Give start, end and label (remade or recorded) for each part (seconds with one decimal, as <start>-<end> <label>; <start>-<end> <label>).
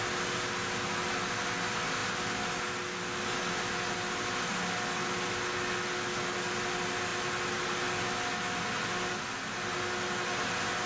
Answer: 0.0-10.9 recorded